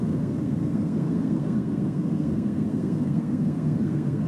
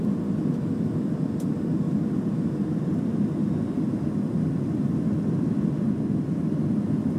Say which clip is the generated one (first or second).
first